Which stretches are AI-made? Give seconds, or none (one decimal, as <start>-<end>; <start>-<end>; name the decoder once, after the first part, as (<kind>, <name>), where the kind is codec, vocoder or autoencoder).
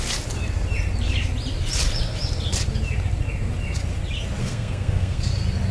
4.4-5.3 (codec, SNAC)